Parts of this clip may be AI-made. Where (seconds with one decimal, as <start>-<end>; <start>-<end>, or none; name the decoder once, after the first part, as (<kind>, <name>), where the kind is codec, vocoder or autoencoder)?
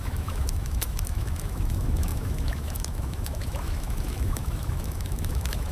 0.0-5.7 (autoencoder, DAC-VAE)